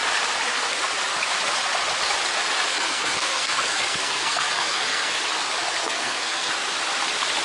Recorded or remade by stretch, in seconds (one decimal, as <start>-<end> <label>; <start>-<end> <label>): 0.0-2.7 recorded; 2.7-5.2 remade; 5.2-5.8 recorded; 5.8-6.5 remade; 6.5-7.4 recorded